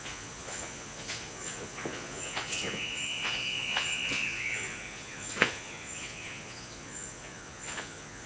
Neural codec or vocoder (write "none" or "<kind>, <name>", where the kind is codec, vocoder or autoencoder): vocoder, Vocos